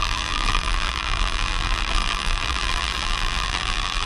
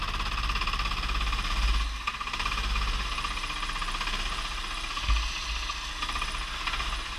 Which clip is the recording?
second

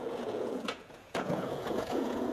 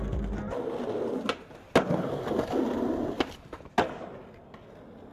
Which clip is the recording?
second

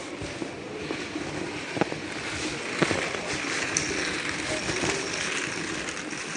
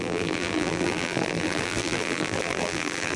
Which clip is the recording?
first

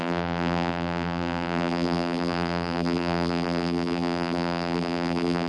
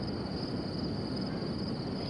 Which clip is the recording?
second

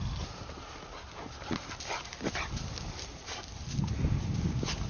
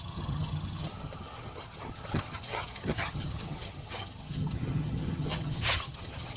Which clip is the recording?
first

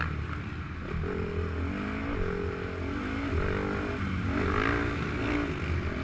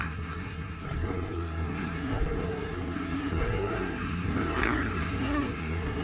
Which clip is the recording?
first